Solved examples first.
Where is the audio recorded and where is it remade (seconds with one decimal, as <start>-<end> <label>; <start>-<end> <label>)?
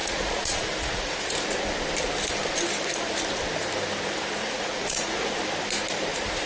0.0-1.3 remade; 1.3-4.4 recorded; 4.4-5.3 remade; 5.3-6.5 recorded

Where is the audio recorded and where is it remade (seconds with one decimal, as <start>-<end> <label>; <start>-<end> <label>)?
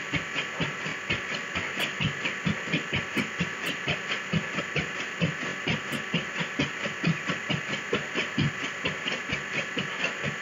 0.0-10.4 recorded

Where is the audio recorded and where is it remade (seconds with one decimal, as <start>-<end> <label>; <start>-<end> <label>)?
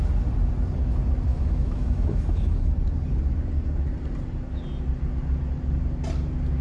0.0-1.3 recorded; 1.3-2.7 remade; 2.7-6.6 recorded